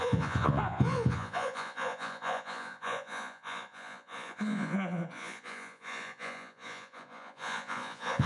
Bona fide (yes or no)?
no